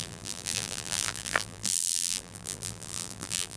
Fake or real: fake